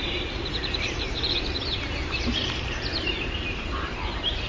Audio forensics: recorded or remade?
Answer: remade